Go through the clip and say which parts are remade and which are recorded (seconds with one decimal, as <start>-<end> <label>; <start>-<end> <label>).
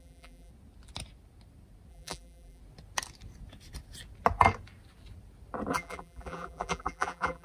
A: 0.0-0.5 remade; 0.5-1.9 recorded; 1.9-2.6 remade; 2.6-5.7 recorded; 5.7-7.4 remade